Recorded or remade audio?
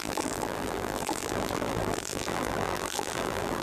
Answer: remade